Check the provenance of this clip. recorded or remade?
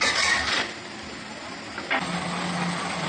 recorded